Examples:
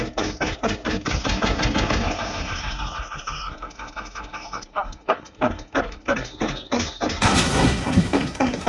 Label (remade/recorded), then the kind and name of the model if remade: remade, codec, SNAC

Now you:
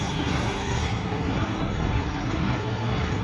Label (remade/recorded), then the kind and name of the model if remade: remade, codec, SNAC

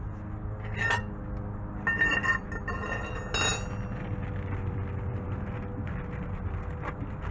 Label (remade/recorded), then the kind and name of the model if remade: recorded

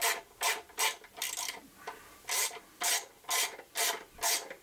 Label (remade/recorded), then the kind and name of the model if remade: recorded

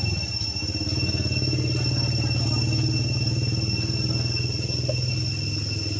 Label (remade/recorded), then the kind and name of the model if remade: recorded